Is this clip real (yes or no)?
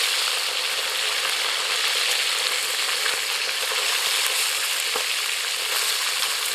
yes